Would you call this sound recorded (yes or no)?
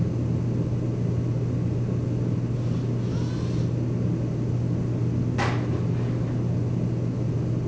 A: yes